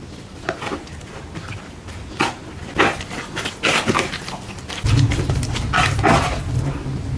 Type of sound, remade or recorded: recorded